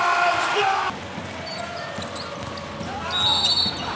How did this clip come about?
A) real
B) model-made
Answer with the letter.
A